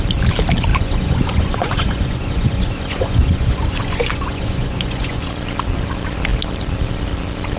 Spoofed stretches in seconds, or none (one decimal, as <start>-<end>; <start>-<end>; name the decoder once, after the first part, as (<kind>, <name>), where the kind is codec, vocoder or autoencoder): 0.7-5.3 (vocoder, Vocos)